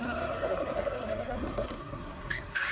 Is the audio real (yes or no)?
no